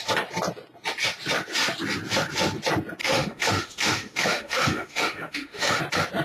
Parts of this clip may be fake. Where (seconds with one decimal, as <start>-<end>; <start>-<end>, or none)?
3.0-5.8